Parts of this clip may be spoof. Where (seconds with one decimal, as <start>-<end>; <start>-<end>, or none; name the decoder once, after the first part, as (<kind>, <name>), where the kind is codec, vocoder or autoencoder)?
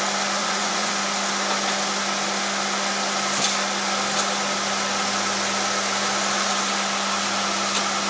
0.4-0.9 (vocoder, Vocos)